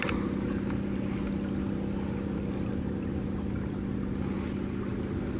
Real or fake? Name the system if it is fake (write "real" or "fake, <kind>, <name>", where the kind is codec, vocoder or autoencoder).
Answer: real